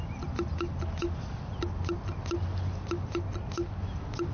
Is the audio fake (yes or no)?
no